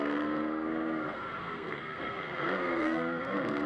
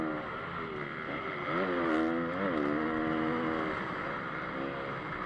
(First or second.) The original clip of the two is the second